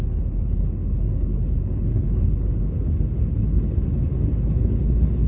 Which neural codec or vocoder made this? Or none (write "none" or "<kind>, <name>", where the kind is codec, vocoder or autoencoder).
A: codec, HILCodec